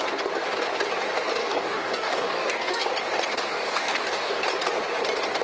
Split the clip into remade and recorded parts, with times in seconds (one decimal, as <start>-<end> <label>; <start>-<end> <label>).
0.0-1.4 recorded; 1.4-2.9 remade; 2.9-3.5 recorded; 3.5-4.4 remade; 4.4-5.4 recorded